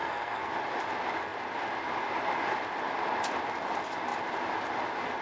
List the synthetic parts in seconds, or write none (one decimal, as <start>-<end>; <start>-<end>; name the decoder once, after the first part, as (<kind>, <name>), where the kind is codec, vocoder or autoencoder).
0.0-0.5 (codec, SNAC)